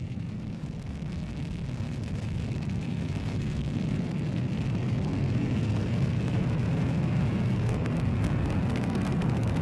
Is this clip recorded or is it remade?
remade